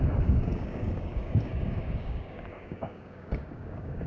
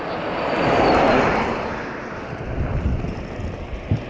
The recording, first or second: second